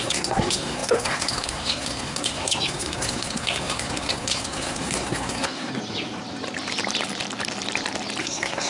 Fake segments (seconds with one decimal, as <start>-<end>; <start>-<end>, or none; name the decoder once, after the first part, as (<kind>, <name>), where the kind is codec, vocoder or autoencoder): 0.0-5.7 (codec, SNAC); 8.2-8.7